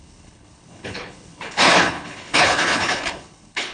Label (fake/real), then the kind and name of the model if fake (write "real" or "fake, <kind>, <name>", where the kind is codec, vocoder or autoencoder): fake, codec, HILCodec